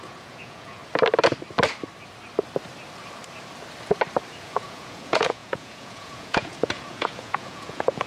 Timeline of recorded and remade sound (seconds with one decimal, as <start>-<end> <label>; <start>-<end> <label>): 0.0-0.8 remade; 0.8-4.4 recorded; 4.4-8.1 remade